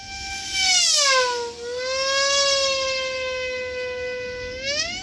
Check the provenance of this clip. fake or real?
real